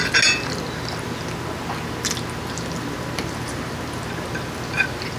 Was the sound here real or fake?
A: real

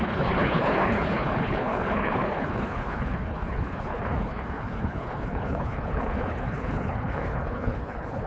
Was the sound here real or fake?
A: fake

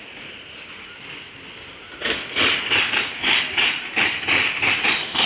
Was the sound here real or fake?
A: real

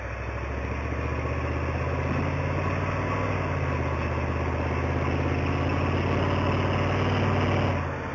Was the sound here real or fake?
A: real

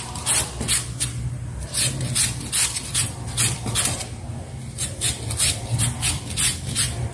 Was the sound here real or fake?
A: real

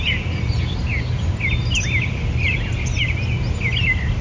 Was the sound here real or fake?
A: real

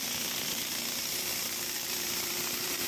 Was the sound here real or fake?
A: fake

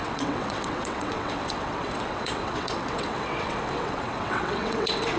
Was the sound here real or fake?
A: fake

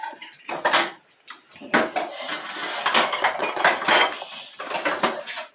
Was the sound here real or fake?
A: real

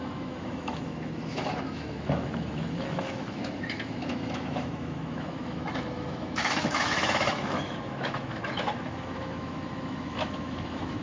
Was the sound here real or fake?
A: fake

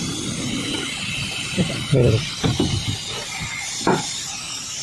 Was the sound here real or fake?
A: real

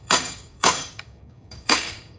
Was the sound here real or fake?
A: fake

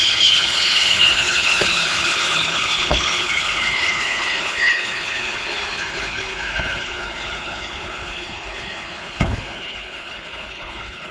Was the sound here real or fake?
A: fake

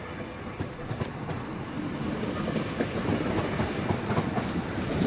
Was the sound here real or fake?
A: real